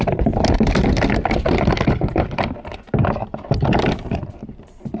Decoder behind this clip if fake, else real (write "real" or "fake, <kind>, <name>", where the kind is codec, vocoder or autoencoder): real